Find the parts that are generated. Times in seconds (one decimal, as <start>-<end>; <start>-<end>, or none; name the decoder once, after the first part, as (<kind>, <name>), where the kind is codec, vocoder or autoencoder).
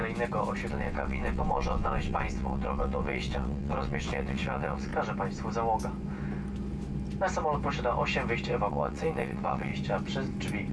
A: 0.7-4.9 (vocoder, WaveNeXt); 8.7-9.7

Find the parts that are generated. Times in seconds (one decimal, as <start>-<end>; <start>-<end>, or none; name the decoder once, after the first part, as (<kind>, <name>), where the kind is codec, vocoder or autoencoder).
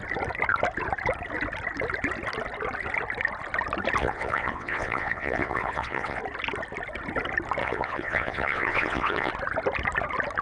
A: 4.0-6.2 (vocoder, WaveNeXt); 7.6-9.3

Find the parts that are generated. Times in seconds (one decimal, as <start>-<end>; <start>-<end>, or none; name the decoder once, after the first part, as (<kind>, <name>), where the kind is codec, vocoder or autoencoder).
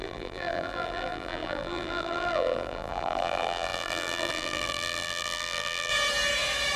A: 0.0-5.9 (vocoder, BigVGAN v2)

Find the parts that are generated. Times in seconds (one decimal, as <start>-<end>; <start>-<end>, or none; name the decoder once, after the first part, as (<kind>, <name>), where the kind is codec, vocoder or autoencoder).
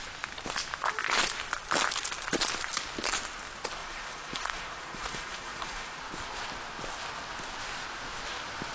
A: 3.8-6.0 (vocoder, Vocos)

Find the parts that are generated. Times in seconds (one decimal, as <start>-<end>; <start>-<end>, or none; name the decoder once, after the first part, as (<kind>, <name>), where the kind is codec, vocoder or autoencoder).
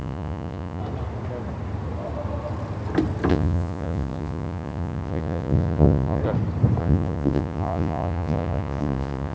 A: 0.0-0.8 (vocoder, Vocos); 3.3-6.2; 6.8-9.3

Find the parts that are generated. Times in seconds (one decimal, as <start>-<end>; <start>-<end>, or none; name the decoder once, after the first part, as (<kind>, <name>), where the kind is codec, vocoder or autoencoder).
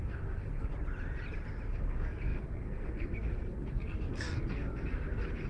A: 0.0-0.7 (codec, SNAC); 1.7-5.5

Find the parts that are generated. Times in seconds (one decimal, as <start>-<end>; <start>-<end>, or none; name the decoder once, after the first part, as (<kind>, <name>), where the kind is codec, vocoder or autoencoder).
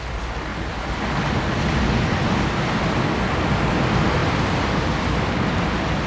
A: none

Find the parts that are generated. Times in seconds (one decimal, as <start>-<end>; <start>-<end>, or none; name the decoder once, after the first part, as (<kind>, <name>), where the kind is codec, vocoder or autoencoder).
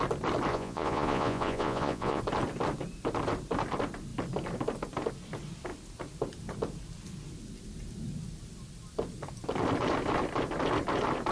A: 0.5-2.2 (vocoder, Vocos)